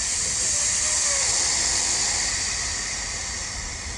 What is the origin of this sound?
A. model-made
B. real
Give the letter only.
B